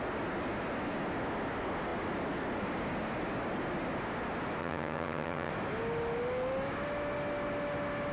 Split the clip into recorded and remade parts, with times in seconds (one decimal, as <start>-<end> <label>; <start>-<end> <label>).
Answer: 0.0-4.6 recorded; 4.6-5.5 remade; 5.5-8.1 recorded

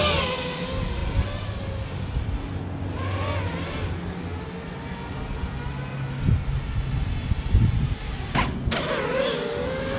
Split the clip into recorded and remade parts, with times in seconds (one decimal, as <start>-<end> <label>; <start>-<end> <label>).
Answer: 0.0-10.0 recorded